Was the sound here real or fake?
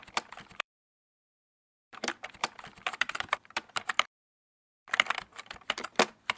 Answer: fake